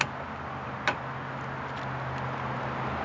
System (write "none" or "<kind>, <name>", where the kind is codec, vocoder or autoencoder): none